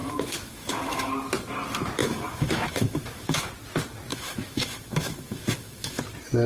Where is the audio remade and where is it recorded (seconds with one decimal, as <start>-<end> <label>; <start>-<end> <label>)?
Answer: 0.0-1.1 remade; 1.1-2.0 recorded; 2.0-3.5 remade; 3.5-4.1 recorded; 4.1-6.0 remade; 6.0-6.5 recorded